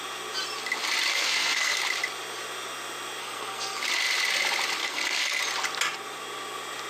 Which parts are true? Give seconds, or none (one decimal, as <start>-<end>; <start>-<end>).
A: 0.0-1.1; 1.8-3.2; 3.8-4.8; 5.4-6.9